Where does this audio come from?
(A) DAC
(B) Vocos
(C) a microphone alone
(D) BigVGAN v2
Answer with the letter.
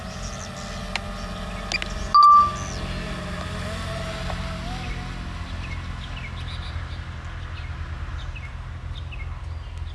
C